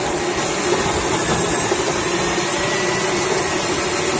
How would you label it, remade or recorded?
recorded